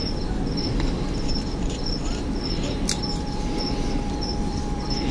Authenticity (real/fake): fake